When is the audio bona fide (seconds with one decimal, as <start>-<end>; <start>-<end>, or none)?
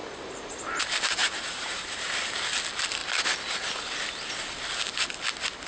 0.5-1.2; 2.3-5.7